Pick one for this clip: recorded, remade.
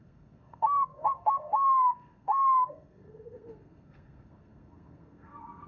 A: remade